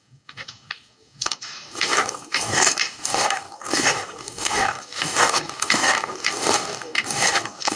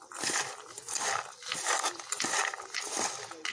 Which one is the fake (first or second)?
first